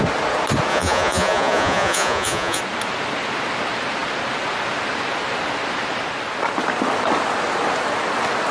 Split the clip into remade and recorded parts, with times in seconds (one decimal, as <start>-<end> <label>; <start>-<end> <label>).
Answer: 0.0-0.7 recorded; 0.7-2.6 remade; 2.6-8.5 recorded